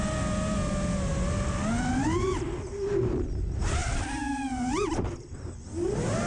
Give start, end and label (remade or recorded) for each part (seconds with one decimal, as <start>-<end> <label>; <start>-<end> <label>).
0.0-6.3 recorded